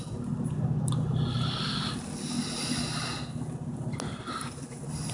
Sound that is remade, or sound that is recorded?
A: recorded